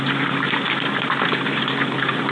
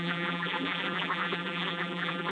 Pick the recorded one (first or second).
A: first